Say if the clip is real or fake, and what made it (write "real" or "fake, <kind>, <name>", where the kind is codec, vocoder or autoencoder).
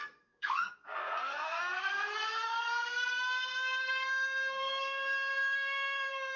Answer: fake, codec, SNAC